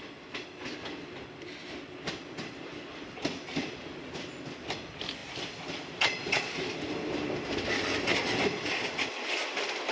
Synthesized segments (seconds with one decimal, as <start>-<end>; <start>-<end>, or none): none